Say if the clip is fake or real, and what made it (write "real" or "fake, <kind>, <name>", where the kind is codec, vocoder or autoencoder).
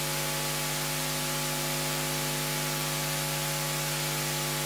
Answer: real